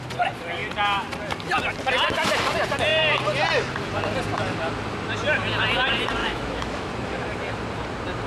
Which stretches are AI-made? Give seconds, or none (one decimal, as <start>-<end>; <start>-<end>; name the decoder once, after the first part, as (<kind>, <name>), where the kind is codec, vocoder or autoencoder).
6.2-6.9 (autoencoder, DAC-VAE)